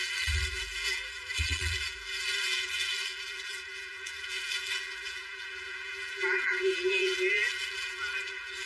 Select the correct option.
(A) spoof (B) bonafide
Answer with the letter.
A